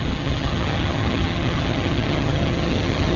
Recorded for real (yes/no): no